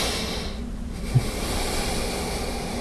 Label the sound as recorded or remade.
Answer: recorded